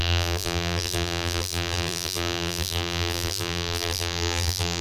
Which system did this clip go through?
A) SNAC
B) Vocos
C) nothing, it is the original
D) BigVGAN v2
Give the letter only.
D